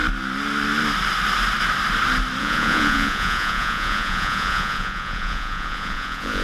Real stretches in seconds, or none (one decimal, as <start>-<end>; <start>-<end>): 0.0-2.4